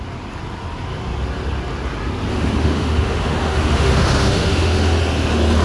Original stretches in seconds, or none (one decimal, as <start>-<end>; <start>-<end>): 0.0-2.3; 5.0-5.6